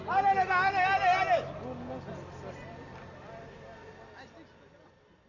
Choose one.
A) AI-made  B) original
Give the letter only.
B